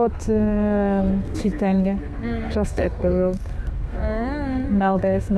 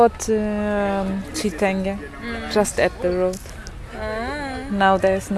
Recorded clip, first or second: second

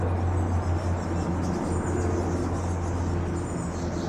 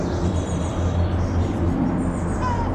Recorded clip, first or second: first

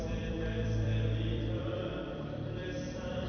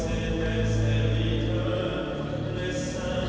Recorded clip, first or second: second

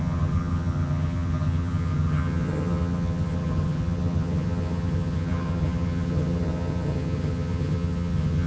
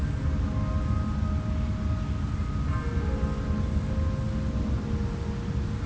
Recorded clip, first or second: second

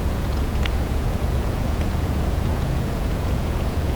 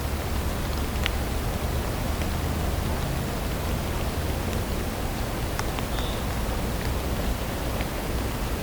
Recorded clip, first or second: second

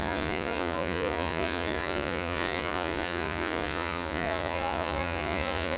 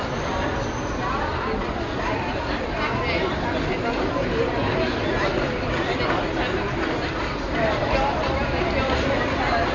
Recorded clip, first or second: second